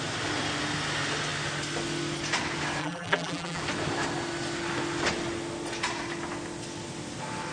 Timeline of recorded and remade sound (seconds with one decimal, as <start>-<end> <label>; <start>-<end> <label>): 0.0-2.8 recorded; 2.8-3.6 remade; 3.6-7.5 recorded